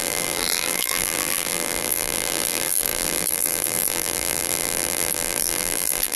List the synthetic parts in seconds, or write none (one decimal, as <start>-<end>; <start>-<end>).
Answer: 0.0-6.2